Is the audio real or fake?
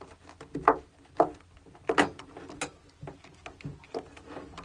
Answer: real